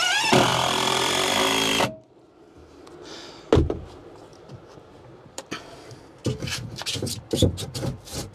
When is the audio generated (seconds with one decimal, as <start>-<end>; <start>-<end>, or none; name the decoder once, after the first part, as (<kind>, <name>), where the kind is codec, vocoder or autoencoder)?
0.5-1.7 (vocoder, BigVGAN v2); 4.3-5.7; 6.2-7.4